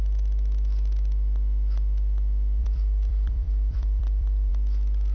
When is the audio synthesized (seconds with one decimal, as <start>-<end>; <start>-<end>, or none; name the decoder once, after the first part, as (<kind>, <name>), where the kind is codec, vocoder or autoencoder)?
2.6-4.5 (vocoder, BigVGAN v2)